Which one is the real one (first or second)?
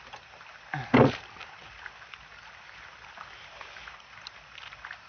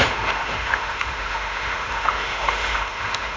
first